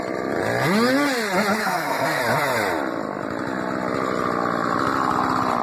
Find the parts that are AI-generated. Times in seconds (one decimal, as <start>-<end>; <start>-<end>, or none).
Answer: 1.6-2.2